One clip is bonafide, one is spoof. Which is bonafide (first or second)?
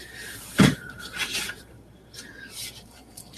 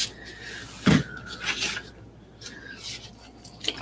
second